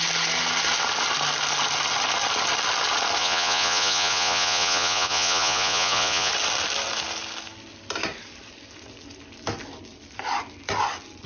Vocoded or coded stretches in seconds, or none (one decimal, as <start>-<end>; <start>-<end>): 3.2-6.3